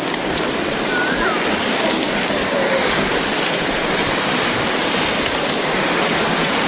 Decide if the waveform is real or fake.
real